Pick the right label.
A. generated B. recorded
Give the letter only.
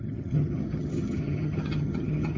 A